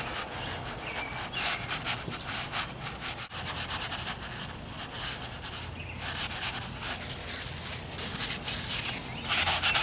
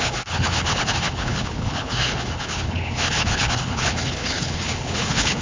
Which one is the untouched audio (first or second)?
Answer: first